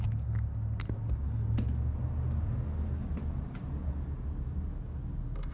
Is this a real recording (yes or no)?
yes